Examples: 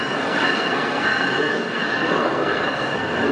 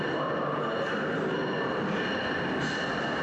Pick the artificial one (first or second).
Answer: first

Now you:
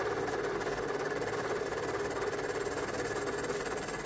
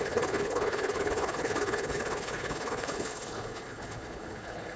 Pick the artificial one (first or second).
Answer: second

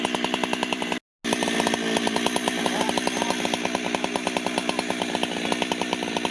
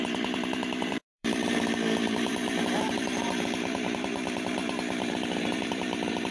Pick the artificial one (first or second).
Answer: second